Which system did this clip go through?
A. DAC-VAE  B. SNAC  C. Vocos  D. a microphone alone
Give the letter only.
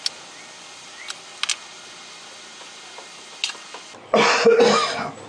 D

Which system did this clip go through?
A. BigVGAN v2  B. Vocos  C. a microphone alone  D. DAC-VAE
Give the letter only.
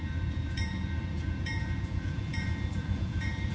B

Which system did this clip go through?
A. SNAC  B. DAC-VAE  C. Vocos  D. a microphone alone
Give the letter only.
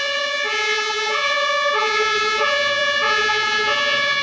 C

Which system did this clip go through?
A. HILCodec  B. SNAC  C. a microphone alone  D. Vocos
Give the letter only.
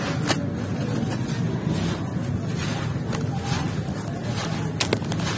C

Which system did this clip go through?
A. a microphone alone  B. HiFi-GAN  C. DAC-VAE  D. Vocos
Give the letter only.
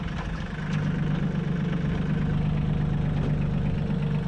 A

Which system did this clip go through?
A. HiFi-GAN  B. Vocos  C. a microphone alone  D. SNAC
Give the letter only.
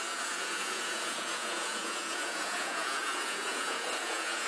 B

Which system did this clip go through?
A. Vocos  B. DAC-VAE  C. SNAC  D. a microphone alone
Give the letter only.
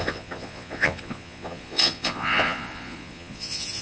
A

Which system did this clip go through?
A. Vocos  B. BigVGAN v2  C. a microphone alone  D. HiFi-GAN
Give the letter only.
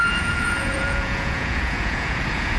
A